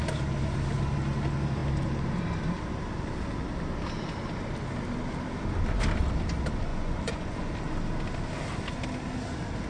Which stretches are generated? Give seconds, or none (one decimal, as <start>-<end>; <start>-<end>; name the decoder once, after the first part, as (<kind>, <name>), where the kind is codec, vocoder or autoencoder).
6.7-7.5 (vocoder, Vocos)